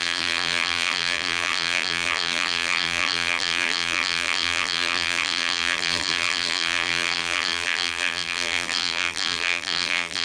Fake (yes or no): yes